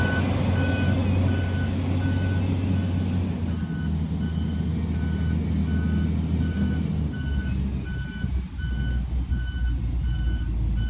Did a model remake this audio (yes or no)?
no